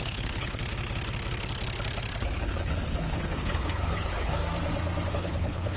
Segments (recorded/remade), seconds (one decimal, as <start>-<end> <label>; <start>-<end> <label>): 0.0-0.6 remade; 0.6-2.4 recorded; 2.4-4.4 remade; 4.4-5.1 recorded; 5.1-5.8 remade